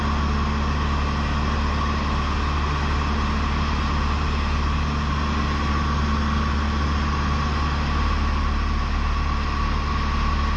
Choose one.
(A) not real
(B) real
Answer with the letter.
B